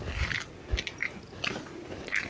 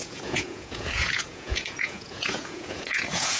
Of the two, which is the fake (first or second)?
second